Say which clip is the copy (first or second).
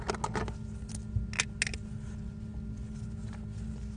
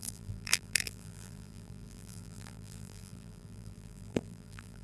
second